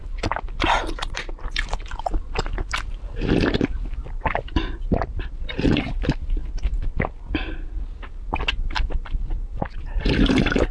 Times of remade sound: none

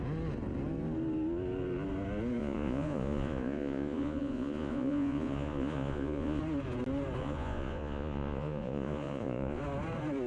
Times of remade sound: 2.4-6.4; 7.2-9.6

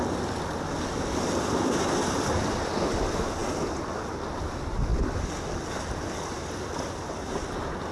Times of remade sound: none